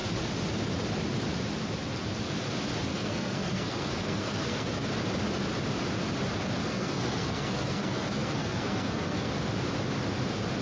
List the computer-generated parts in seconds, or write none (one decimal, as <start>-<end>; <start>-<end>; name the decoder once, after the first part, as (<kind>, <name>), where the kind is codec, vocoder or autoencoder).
2.9-4.9 (codec, SNAC); 6.6-9.3